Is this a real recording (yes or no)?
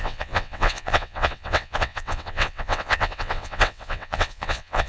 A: no